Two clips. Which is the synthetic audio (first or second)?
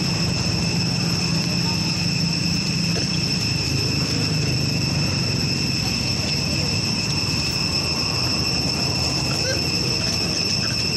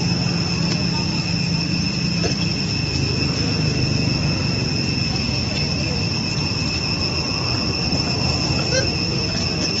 first